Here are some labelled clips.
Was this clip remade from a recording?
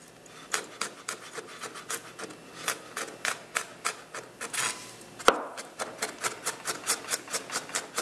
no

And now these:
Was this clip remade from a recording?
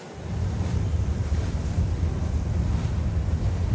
no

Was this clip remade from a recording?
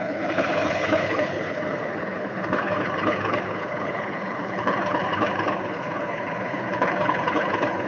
yes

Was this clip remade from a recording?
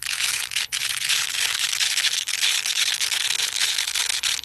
yes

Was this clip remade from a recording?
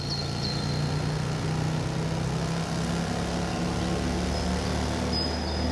no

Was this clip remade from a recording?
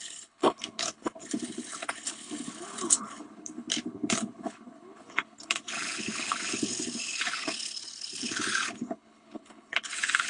yes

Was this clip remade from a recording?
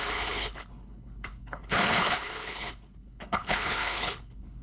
yes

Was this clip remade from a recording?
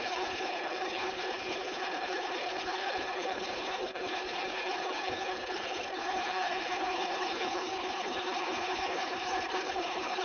yes